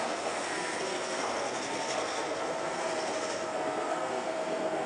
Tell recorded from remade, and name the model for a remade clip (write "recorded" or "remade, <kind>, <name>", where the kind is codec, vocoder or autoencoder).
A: remade, codec, SNAC